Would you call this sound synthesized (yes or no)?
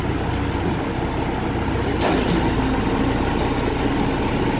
no